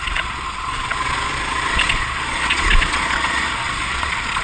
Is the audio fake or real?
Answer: fake